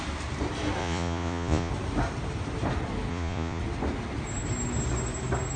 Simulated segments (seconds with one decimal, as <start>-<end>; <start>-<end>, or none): 0.8-1.7; 3.1-3.6